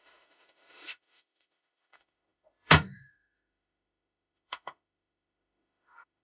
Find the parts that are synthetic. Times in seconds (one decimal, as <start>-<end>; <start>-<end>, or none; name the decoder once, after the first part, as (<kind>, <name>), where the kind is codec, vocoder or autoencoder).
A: 0.0-6.2 (autoencoder, DAC-VAE)